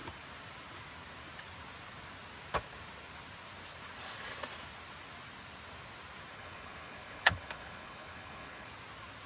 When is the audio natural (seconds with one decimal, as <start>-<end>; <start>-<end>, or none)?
0.0-6.3; 8.7-9.3